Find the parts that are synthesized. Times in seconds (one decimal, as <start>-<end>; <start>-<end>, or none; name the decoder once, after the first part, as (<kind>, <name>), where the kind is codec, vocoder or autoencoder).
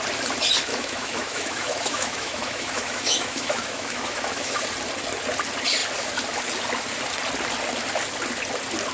0.7-4.6 (autoencoder, DAC-VAE)